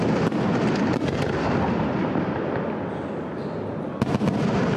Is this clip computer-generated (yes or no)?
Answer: no